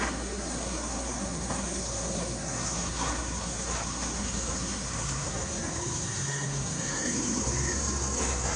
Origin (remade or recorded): remade